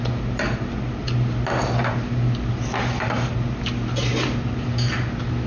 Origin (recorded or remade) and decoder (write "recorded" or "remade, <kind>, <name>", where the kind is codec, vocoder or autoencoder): recorded